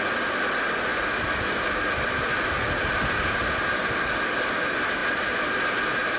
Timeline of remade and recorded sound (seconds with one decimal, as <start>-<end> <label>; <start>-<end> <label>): 0.0-6.2 recorded

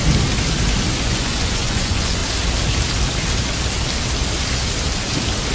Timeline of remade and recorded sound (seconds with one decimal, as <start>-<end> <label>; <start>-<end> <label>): 0.0-1.0 recorded; 1.0-2.2 remade; 2.2-5.5 recorded

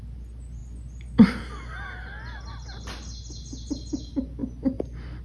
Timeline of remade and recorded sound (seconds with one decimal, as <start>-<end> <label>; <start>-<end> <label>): 0.0-5.2 recorded

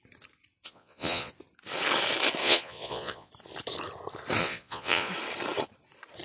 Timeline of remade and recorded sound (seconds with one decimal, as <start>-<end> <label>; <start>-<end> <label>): 0.0-0.6 recorded; 0.6-1.3 remade; 1.3-2.4 recorded; 2.4-3.3 remade; 3.3-4.4 recorded; 4.4-5.1 remade; 5.1-6.2 recorded